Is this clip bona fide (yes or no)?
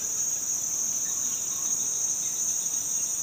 yes